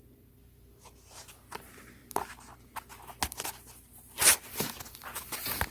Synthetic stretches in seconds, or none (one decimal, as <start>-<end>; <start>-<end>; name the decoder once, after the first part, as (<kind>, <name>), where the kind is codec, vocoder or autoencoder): none